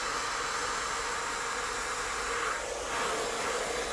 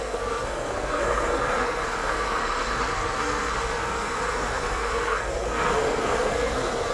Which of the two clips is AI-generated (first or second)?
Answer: second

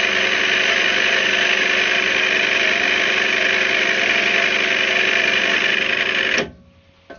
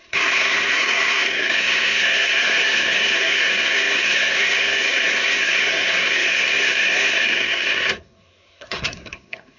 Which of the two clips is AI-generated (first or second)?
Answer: second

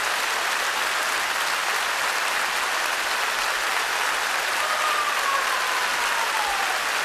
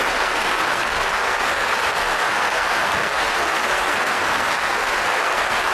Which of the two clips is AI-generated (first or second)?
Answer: second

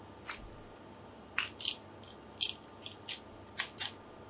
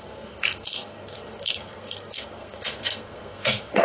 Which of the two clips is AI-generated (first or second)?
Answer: second